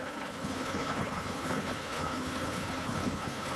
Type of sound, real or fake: fake